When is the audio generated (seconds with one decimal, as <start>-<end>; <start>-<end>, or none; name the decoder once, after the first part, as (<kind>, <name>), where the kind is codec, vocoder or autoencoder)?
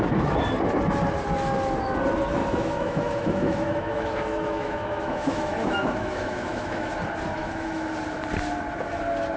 2.4-6.9 (autoencoder, DAC-VAE); 7.4-7.9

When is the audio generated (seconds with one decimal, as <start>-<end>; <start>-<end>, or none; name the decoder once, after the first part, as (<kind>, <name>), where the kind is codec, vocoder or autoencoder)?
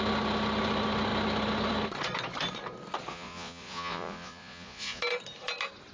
3.1-5.0 (vocoder, Vocos)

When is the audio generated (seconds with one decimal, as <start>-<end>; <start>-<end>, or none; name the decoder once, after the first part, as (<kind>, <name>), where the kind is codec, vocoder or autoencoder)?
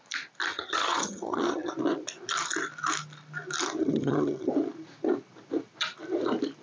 0.5-1.7 (vocoder, HiFi-GAN); 3.8-4.5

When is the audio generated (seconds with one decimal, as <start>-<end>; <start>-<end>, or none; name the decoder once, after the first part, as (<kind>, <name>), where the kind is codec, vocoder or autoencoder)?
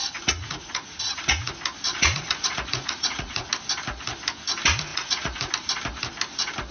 0.0-1.5 (vocoder, Vocos); 1.9-3.5; 4.9-5.5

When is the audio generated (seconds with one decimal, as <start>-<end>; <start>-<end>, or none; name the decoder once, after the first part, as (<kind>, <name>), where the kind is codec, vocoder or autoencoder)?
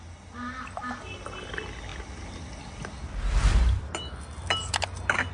none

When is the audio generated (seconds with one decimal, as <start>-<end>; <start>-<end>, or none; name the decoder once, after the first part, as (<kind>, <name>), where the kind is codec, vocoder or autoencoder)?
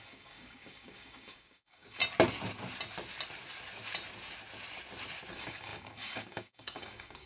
0.0-2.0 (codec, DAC); 5.3-7.3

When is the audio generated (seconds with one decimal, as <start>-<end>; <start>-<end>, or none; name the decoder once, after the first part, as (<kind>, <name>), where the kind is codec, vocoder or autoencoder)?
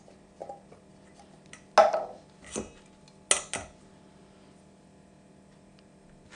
none